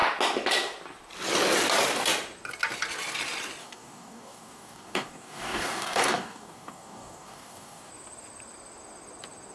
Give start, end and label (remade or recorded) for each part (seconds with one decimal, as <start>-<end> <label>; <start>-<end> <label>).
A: 0.0-3.6 recorded; 3.6-7.9 remade; 7.9-9.5 recorded